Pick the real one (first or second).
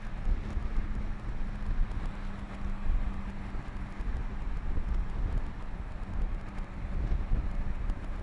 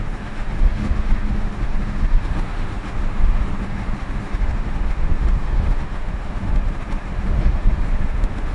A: first